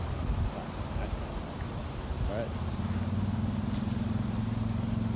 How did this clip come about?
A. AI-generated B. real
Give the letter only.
B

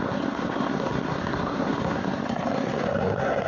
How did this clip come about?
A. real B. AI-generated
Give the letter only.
B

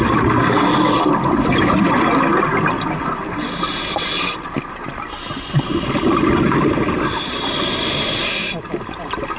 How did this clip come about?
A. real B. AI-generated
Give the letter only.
A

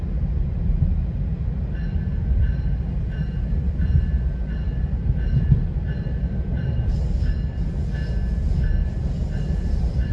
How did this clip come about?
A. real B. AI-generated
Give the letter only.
A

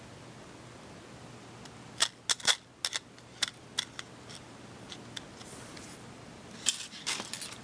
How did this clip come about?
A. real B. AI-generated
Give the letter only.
A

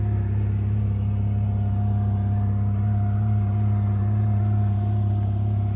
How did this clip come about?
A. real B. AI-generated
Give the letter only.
A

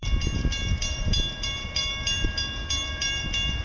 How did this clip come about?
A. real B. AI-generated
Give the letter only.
B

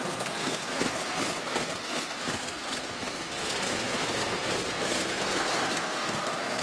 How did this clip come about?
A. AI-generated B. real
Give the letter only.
A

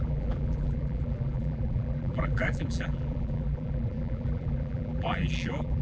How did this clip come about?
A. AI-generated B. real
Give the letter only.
A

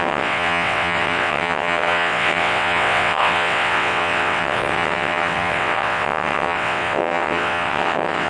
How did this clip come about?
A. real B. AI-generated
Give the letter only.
B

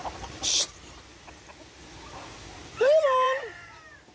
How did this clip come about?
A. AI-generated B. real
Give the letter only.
A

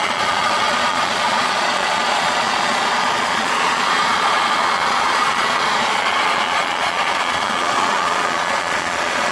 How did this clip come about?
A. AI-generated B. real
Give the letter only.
A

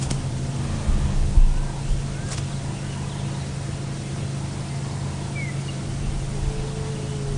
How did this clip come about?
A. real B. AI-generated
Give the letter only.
A